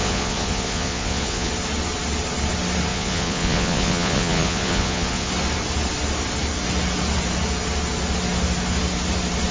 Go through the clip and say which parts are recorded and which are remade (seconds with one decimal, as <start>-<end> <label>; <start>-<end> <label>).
0.0-1.5 remade; 1.5-2.9 recorded; 2.9-5.3 remade; 5.3-9.5 recorded